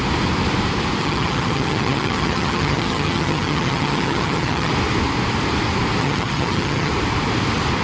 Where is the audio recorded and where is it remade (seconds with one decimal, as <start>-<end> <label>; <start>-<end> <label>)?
0.0-1.0 recorded; 1.0-4.7 remade; 4.7-6.0 recorded; 6.0-6.9 remade; 6.9-7.8 recorded